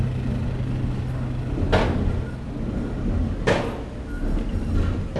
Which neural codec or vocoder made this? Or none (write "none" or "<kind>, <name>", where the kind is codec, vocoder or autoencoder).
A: none